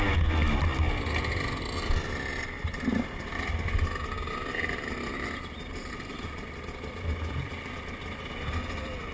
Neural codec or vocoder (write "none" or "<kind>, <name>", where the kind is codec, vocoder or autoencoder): none